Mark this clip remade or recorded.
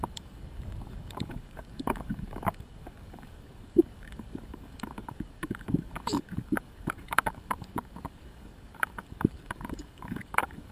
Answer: remade